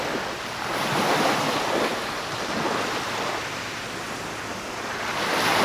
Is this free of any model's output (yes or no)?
yes